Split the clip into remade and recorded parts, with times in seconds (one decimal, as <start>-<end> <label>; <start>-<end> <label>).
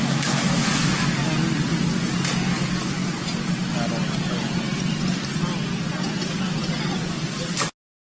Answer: 0.0-8.0 recorded